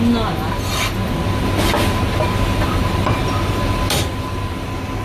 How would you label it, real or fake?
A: real